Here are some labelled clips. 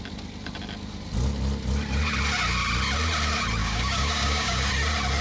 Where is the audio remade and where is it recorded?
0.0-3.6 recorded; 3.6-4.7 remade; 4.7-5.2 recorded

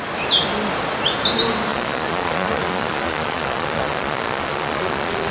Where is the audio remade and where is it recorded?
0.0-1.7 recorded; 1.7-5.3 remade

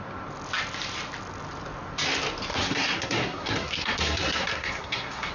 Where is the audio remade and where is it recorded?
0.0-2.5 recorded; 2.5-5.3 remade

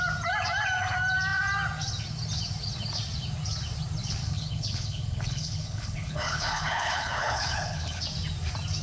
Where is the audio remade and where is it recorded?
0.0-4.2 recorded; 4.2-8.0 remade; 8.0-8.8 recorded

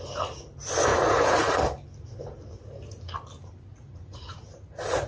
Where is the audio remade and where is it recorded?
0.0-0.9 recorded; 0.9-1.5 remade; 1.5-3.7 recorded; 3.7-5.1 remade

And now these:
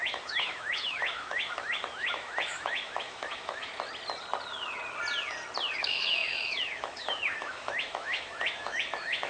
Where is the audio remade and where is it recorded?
0.0-3.7 remade; 3.7-5.8 recorded; 5.8-9.3 remade

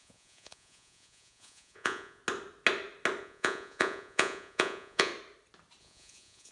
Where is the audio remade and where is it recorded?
0.0-2.2 remade; 2.2-3.2 recorded; 3.2-5.1 remade; 5.1-5.8 recorded; 5.8-6.5 remade